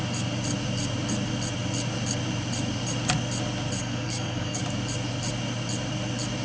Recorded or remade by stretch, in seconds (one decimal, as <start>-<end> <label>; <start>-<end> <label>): 0.0-3.8 recorded; 3.8-4.6 remade; 4.6-6.4 recorded